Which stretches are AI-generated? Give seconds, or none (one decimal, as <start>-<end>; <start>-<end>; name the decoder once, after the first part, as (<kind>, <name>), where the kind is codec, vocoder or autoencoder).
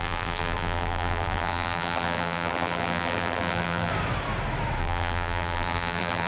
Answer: 0.0-3.9 (vocoder, BigVGAN v2); 4.8-6.3